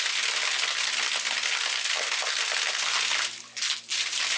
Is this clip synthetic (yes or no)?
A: no